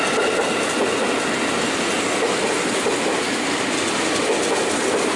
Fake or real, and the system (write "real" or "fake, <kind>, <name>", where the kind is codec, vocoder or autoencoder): real